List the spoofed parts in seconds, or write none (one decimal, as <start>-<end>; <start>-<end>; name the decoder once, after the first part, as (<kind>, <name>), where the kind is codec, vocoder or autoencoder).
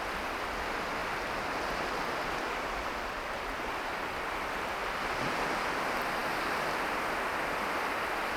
none